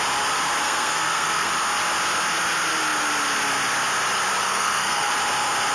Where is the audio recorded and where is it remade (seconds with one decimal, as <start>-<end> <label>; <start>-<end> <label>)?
0.0-0.6 recorded; 0.6-1.5 remade; 1.5-4.4 recorded; 4.4-5.1 remade; 5.1-5.7 recorded